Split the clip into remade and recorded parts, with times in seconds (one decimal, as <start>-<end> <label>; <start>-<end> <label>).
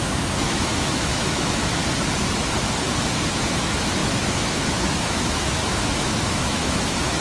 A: 0.0-1.8 remade; 1.8-3.3 recorded; 3.3-7.2 remade